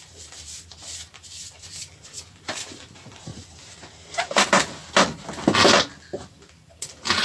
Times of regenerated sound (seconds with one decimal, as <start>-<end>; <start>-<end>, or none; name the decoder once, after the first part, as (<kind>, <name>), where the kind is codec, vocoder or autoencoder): 0.0-3.3 (vocoder, BigVGAN v2); 4.2-4.8; 6.3-7.2